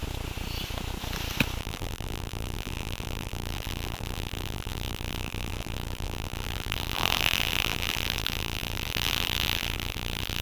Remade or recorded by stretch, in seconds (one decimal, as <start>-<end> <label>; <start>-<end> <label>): 0.0-1.6 recorded; 1.6-10.4 remade